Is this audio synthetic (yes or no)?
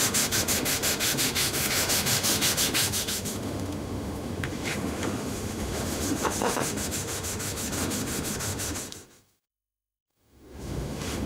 yes